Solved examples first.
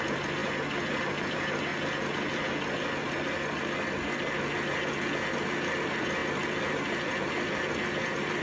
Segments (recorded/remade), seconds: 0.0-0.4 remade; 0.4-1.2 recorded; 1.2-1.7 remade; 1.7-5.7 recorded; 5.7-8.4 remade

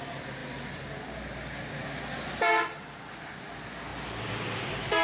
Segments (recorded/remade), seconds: 0.0-5.0 recorded